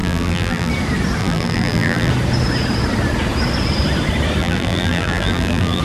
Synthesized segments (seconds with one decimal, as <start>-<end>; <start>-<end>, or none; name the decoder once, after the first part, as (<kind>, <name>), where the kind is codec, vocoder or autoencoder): 0.0-0.7 (vocoder, BigVGAN v2); 1.2-2.1; 4.4-5.8

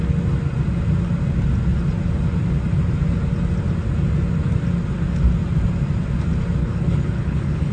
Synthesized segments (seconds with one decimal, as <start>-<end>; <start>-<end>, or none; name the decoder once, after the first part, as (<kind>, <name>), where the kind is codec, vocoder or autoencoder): 6.6-7.7 (codec, HILCodec)